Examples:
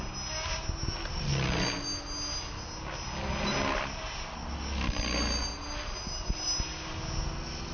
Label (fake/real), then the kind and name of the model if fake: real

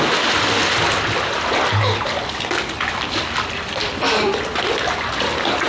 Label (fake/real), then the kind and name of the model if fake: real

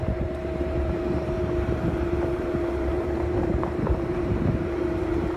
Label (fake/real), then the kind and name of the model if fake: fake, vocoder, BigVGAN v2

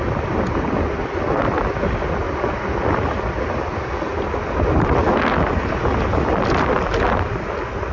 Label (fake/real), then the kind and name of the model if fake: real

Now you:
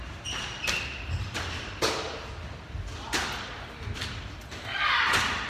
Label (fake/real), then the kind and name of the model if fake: real